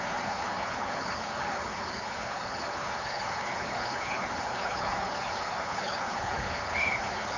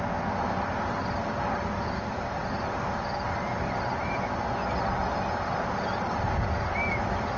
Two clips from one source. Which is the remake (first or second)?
first